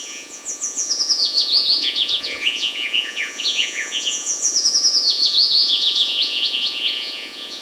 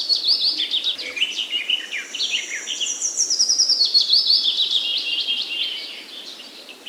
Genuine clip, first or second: second